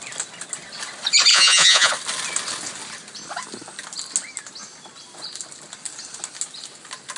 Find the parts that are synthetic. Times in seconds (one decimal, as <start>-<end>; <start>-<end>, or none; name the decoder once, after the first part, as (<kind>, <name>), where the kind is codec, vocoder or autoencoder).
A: 1.3-1.9 (vocoder, Vocos)